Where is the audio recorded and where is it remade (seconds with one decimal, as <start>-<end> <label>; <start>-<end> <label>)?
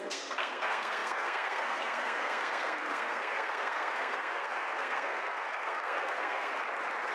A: 0.0-6.5 remade; 6.5-7.1 recorded